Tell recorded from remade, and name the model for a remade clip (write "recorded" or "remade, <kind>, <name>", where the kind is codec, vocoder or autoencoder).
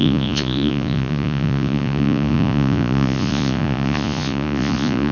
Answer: remade, vocoder, Vocos